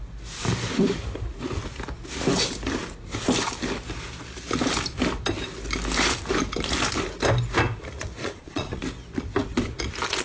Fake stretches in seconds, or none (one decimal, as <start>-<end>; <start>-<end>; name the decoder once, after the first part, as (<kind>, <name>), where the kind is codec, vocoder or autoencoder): 8.2-8.8 (vocoder, Vocos)